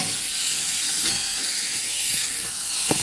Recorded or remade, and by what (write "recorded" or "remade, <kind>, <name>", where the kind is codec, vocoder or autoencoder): remade, codec, SNAC